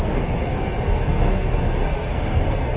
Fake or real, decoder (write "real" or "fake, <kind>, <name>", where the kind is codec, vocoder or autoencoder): fake, codec, SNAC